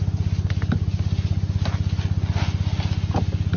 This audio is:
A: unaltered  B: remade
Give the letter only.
A